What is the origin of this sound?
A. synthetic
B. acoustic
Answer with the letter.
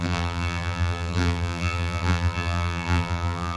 A